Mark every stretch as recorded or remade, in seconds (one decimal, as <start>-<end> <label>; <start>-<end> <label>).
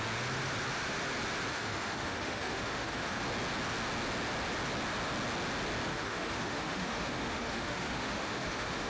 0.0-1.5 recorded; 1.5-3.2 remade; 3.2-5.9 recorded; 5.9-8.9 remade